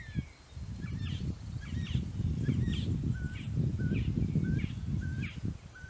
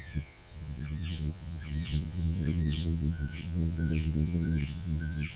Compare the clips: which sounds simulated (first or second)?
second